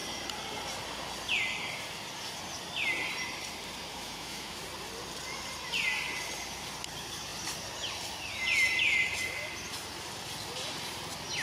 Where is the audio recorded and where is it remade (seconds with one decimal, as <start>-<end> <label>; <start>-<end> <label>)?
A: 0.0-3.9 recorded; 3.9-4.6 remade; 4.6-11.4 recorded

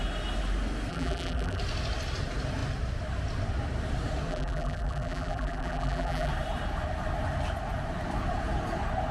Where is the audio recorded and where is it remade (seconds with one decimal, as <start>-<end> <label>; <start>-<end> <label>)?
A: 0.0-0.9 recorded; 0.9-1.6 remade; 1.6-4.3 recorded; 4.3-6.3 remade; 6.3-9.1 recorded

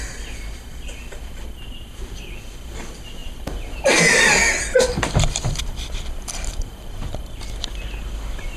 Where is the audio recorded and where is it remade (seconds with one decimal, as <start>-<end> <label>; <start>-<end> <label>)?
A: 0.0-3.2 recorded; 3.2-7.6 remade; 7.6-8.6 recorded

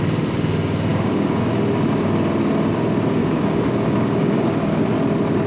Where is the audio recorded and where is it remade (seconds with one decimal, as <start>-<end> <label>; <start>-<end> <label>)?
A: 0.0-0.9 recorded; 0.9-1.5 remade; 1.5-3.2 recorded; 3.2-4.8 remade; 4.8-5.5 recorded

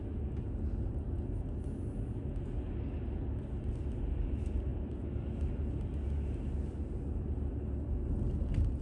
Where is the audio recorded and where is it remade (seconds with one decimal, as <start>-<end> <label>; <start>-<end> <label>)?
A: 0.0-8.8 recorded

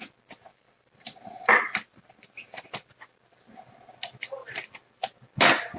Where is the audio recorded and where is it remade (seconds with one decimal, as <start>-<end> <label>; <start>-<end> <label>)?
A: 0.0-0.5 recorded; 0.5-1.5 remade; 1.5-5.8 recorded

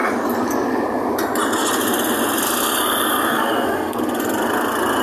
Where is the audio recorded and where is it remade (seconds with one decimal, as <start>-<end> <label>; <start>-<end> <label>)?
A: 0.0-3.3 recorded; 3.3-4.0 remade; 4.0-5.0 recorded

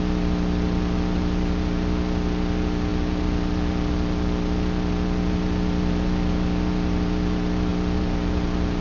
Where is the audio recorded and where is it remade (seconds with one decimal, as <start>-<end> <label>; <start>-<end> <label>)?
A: 0.0-8.8 recorded